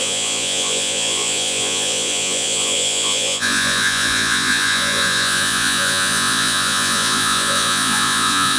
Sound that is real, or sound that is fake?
fake